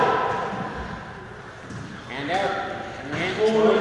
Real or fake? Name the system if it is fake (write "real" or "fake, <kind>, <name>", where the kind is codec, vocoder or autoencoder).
real